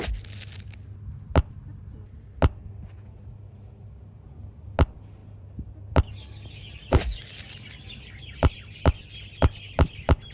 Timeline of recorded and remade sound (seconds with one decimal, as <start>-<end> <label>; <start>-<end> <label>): 0.0-10.3 recorded